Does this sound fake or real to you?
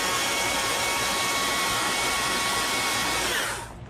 fake